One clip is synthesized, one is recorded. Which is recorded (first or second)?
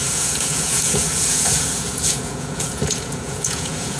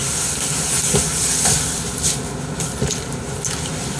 second